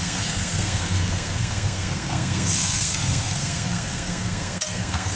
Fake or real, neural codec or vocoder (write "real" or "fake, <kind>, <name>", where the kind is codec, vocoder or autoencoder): fake, codec, SNAC